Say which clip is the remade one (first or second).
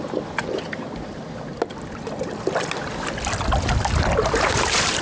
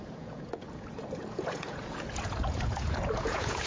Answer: second